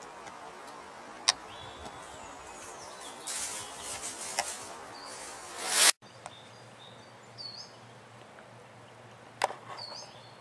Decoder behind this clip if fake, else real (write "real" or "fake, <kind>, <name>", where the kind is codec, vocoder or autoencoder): real